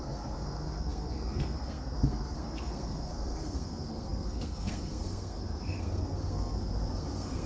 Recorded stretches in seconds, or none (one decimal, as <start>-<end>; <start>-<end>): none